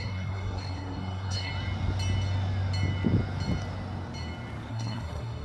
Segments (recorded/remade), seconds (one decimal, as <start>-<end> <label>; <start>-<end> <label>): 0.0-1.5 remade; 1.5-4.7 recorded; 4.7-5.4 remade